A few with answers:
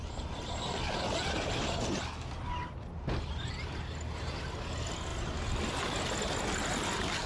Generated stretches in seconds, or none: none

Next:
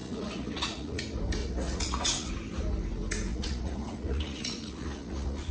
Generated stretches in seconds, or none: 0.0-1.0 (vocoder, Vocos); 1.4-2.3; 3.3-5.5

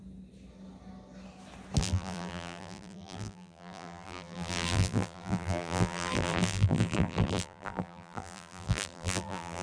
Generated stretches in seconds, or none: 1.8-9.6 (vocoder, BigVGAN v2)

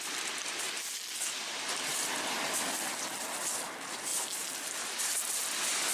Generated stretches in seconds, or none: none

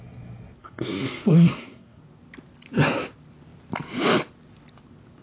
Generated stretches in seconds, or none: 0.6-2.0 (codec, SNAC)

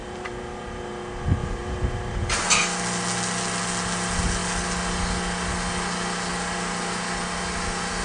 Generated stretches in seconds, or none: 0.0-0.8 (vocoder, BigVGAN v2); 1.4-2.6